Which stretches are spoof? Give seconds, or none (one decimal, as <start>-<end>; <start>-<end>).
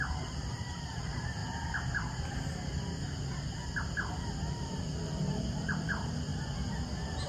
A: 0.0-1.4; 4.5-6.3